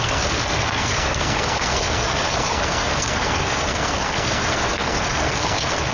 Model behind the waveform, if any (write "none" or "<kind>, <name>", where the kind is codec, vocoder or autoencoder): codec, SNAC